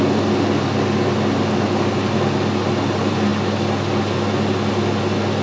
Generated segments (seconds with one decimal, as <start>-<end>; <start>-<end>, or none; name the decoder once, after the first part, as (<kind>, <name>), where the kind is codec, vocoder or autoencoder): none